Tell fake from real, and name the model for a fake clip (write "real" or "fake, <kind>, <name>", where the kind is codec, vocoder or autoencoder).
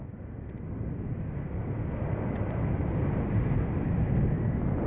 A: real